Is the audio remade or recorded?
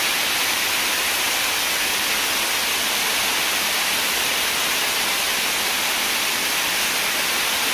recorded